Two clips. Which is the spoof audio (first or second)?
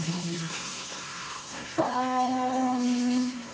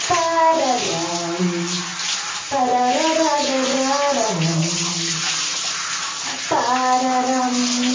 first